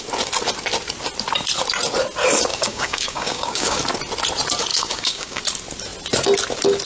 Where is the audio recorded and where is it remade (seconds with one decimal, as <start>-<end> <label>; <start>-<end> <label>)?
0.0-2.5 recorded; 2.5-3.8 remade; 3.8-4.7 recorded; 4.7-5.4 remade; 5.4-6.9 recorded